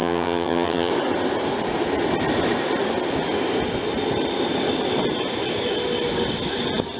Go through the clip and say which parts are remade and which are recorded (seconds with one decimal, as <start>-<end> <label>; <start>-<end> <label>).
0.0-0.9 remade; 0.9-7.0 recorded